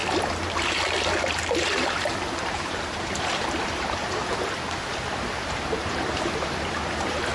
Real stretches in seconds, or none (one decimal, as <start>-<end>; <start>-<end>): 0.0-2.4; 4.2-5.3